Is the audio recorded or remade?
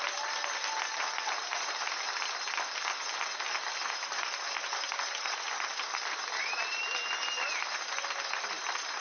recorded